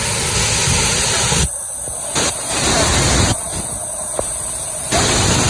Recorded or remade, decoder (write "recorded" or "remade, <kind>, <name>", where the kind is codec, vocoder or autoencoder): recorded